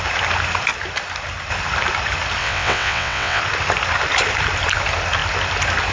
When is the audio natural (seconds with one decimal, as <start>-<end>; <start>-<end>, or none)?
0.0-2.4; 3.4-5.9